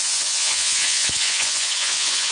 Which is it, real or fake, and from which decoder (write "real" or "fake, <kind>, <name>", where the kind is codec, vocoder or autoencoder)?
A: fake, vocoder, Vocos